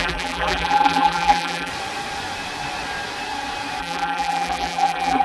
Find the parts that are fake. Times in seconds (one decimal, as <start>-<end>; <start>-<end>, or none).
0.0-1.7; 3.8-5.2